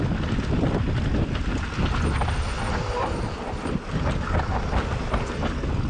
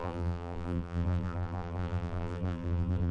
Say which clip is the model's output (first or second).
second